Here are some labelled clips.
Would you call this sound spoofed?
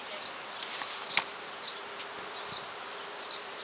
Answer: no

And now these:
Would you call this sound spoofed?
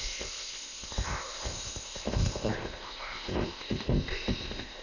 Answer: yes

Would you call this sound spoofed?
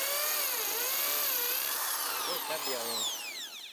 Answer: no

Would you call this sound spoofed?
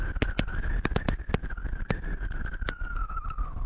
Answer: no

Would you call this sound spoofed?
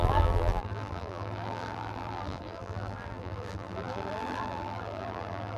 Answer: yes